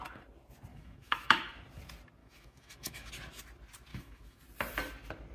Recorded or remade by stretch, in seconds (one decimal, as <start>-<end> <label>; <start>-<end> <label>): 0.0-0.7 recorded; 0.7-1.5 remade; 1.5-2.2 recorded; 2.2-3.1 remade; 3.1-3.9 recorded; 3.9-4.4 remade; 4.4-5.3 recorded